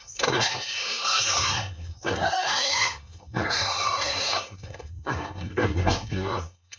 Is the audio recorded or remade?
remade